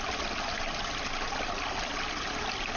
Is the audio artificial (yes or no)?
no